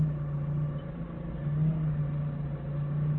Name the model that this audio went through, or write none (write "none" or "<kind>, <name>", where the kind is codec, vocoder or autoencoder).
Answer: none